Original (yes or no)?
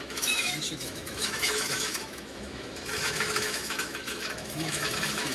no